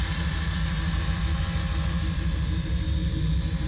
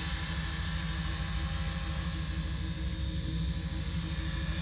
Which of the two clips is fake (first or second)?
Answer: first